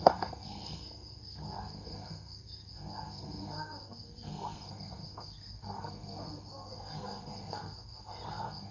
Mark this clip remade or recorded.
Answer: remade